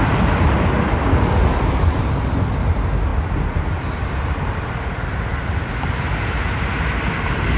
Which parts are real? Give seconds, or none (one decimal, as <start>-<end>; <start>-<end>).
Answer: 0.0-7.6